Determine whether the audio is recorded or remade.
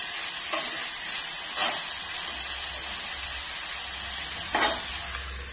recorded